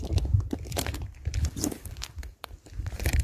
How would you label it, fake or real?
fake